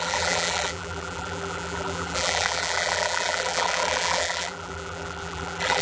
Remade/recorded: remade